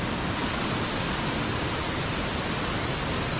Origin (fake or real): real